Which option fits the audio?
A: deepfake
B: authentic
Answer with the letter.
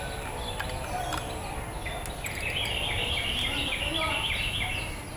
B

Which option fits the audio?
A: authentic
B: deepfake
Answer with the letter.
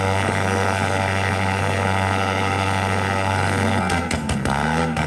B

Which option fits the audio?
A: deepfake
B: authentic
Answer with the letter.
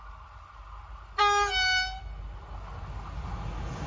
B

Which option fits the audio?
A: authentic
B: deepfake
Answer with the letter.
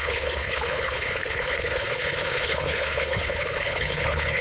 B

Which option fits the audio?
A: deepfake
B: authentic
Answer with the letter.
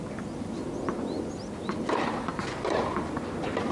B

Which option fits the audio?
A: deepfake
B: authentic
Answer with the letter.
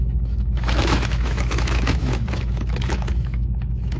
A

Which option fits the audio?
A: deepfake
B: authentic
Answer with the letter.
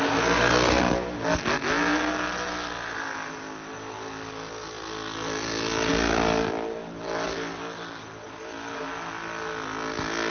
B